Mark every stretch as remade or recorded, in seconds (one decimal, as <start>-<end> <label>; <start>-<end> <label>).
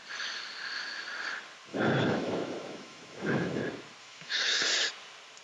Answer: 0.0-1.7 recorded; 1.7-3.6 remade; 3.6-4.0 recorded; 4.0-4.6 remade; 4.6-5.4 recorded